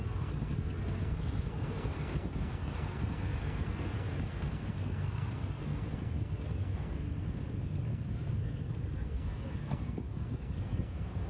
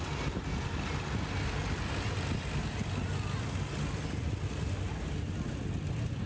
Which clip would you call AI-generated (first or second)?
first